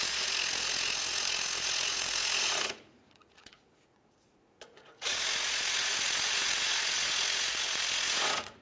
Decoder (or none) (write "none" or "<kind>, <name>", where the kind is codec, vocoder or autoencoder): vocoder, Vocos